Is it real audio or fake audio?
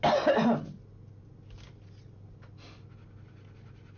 real